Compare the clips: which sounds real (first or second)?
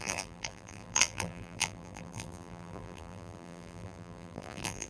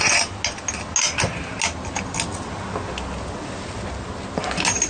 second